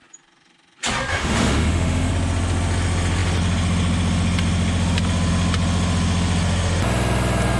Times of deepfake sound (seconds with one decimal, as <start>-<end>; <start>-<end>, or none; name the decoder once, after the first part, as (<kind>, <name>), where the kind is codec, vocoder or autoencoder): 1.1-2.1 (autoencoder, DAC-VAE)